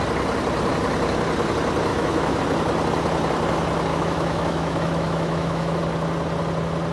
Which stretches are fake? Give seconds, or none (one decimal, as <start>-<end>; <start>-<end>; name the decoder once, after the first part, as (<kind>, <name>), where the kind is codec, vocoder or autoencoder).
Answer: 1.9-2.4 (autoencoder, DAC-VAE); 3.9-5.8

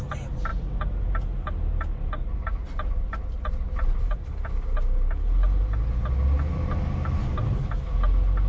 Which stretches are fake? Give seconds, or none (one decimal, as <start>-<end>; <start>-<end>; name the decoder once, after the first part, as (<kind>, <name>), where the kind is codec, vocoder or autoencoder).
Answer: none

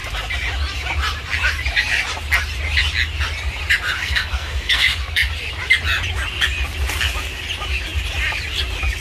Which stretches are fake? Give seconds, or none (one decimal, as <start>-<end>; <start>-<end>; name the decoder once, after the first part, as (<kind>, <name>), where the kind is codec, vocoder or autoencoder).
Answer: 4.0-5.3 (codec, SNAC)

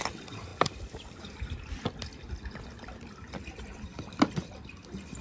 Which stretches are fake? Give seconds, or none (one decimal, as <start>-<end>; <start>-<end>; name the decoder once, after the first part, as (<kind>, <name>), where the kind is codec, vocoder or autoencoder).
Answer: none

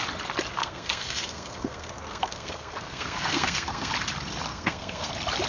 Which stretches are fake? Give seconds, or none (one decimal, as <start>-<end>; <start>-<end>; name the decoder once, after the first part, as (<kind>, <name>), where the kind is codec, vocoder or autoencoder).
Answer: 0.6-3.9 (codec, SNAC); 4.5-5.1